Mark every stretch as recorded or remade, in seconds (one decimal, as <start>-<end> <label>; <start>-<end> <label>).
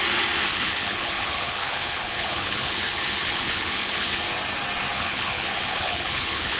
0.0-0.5 recorded; 0.5-4.2 remade; 4.2-4.9 recorded; 4.9-6.6 remade